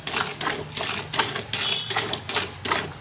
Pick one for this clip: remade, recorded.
recorded